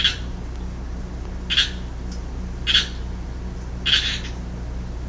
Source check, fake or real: real